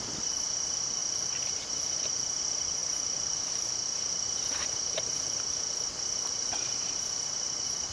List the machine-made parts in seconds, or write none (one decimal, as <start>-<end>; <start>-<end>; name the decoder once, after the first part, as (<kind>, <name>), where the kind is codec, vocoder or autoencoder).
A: none